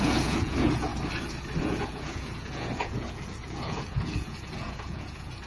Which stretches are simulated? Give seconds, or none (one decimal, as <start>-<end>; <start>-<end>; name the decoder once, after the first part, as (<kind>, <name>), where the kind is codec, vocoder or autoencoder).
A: 0.0-0.9 (vocoder, Vocos); 1.6-5.5